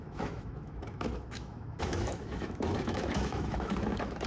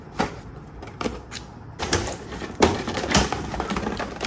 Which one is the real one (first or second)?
second